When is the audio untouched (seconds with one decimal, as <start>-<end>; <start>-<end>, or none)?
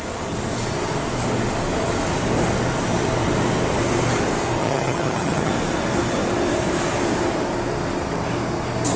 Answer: 0.0-4.6; 5.5-9.0